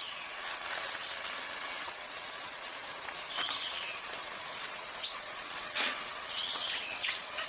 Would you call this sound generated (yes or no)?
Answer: yes